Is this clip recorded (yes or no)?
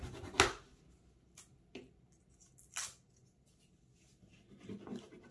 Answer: yes